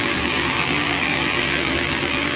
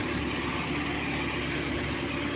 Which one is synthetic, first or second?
first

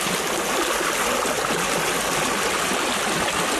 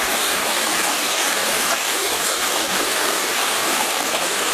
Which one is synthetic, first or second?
second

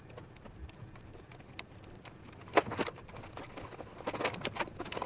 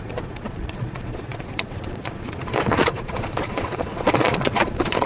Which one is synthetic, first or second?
second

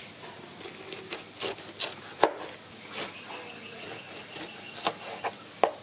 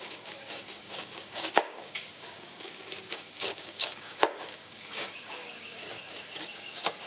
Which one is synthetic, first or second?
second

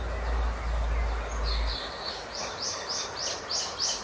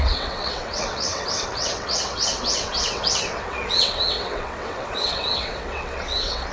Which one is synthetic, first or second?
second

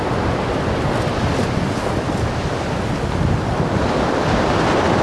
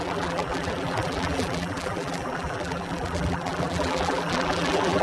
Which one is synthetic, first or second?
second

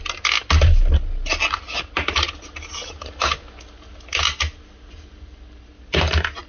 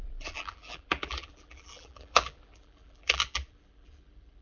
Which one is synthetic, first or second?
second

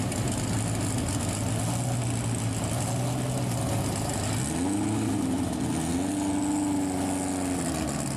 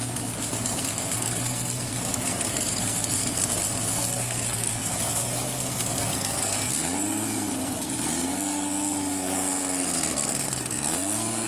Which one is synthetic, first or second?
second